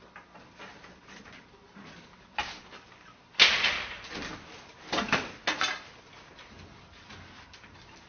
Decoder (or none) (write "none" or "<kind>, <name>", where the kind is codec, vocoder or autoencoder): none